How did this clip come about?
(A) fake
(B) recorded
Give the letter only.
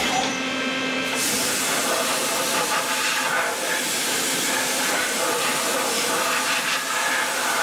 A